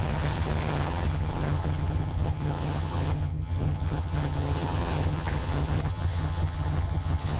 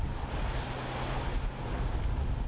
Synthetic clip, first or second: first